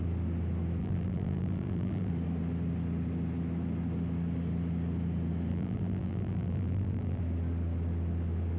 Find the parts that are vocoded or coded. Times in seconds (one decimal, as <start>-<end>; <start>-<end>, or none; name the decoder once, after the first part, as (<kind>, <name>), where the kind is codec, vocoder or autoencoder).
0.8-2.1 (vocoder, BigVGAN v2); 5.5-7.2